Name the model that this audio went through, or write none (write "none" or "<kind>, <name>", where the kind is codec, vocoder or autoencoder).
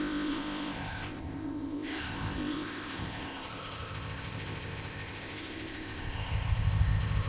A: codec, ZipCodec